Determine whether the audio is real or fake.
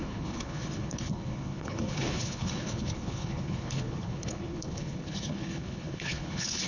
fake